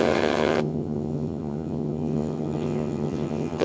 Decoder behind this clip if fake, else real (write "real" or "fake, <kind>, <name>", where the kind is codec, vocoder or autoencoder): fake, vocoder, HiFi-GAN